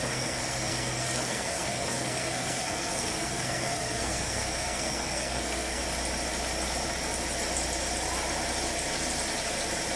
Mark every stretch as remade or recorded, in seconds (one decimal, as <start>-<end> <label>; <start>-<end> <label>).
0.0-5.8 remade; 5.8-10.0 recorded